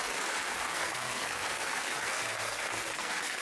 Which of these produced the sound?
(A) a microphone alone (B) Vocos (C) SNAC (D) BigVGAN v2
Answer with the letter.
C